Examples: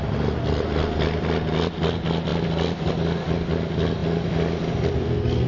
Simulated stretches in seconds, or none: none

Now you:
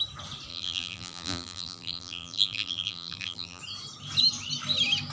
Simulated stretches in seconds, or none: 0.5-3.6

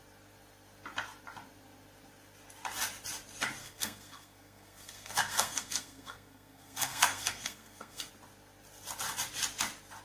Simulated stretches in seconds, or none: 3.6-8.1

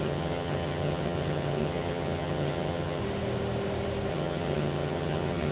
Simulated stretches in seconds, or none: 0.0-3.0; 4.1-5.5

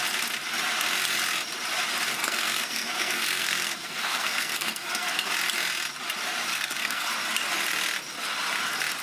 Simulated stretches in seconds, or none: 2.2-5.3; 6.5-7.1